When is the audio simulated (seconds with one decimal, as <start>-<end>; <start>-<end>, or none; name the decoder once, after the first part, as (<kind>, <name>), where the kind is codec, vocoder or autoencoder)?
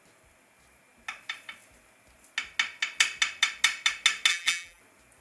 4.3-4.8 (vocoder, BigVGAN v2)